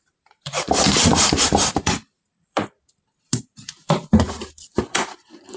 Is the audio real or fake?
fake